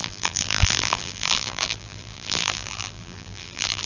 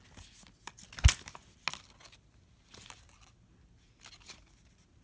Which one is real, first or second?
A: second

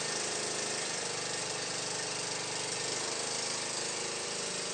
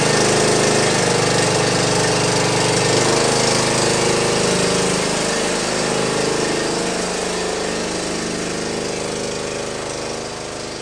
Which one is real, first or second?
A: second